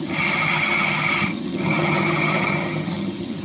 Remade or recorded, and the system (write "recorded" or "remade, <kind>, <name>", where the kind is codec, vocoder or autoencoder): remade, vocoder, HiFi-GAN